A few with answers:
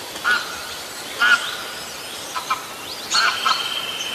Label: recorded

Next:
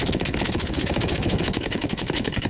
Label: remade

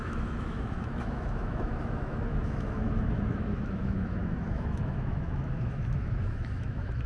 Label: remade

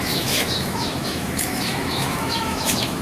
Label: remade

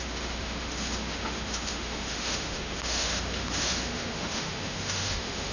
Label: remade